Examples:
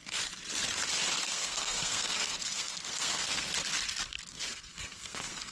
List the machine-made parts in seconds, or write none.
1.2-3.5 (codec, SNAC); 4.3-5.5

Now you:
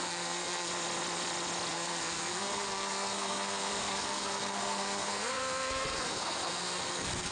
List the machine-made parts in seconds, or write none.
0.0-0.7 (codec, SNAC); 1.7-7.3